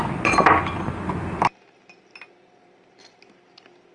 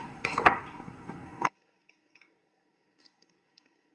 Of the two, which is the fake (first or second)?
second